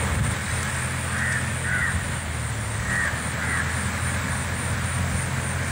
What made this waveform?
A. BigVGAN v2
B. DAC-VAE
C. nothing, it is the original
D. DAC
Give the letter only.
C